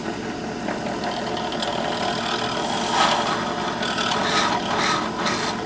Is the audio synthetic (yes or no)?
no